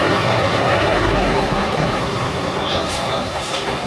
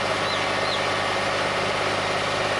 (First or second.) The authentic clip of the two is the second